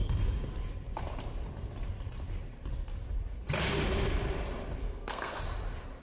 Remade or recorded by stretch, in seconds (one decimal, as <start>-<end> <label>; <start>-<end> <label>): 0.0-4.8 recorded; 4.8-5.4 remade; 5.4-6.0 recorded